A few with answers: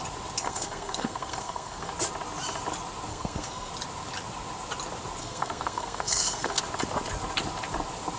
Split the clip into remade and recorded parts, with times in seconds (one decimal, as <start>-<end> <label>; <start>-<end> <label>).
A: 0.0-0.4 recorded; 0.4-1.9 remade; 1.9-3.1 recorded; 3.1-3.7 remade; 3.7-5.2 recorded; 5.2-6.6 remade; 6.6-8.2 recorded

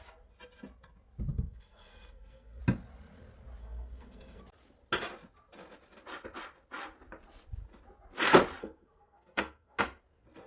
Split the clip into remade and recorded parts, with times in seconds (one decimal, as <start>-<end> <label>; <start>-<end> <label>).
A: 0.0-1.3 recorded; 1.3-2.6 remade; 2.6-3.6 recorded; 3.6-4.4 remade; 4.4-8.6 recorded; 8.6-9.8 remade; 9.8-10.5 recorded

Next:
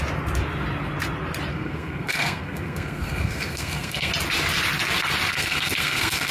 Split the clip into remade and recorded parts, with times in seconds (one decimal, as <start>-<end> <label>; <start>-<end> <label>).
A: 0.0-1.5 recorded; 1.5-4.1 remade; 4.1-5.3 recorded; 5.3-6.3 remade

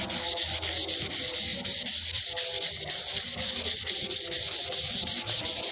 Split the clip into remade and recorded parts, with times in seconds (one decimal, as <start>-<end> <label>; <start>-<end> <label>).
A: 0.0-5.7 recorded

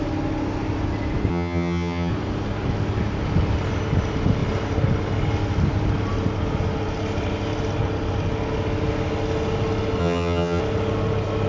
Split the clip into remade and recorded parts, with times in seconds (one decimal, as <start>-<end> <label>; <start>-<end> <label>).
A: 0.0-1.3 recorded; 1.3-2.1 remade; 2.1-10.0 recorded; 10.0-10.6 remade; 10.6-11.5 recorded

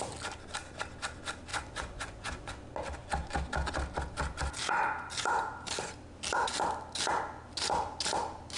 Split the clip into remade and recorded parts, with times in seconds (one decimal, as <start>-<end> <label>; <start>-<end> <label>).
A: 0.0-1.5 recorded; 1.5-2.5 remade; 2.5-8.6 recorded

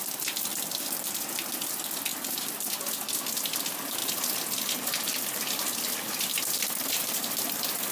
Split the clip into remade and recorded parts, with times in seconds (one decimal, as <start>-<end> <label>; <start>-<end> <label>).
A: 0.0-7.9 recorded